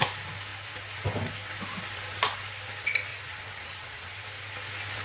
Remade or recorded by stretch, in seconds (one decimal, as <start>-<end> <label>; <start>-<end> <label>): 0.0-3.1 recorded; 3.1-4.1 remade; 4.1-5.0 recorded